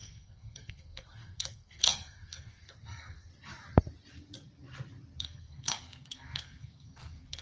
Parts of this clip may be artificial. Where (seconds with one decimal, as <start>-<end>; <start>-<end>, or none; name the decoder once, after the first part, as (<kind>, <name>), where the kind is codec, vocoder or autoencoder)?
0.0-3.3 (codec, SNAC); 5.2-7.4